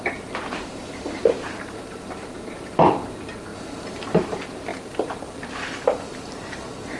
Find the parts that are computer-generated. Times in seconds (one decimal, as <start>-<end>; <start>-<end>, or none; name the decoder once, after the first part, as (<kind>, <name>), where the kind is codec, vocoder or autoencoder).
0.0-3.5 (vocoder, BigVGAN v2); 4.1-4.7; 6.2-7.0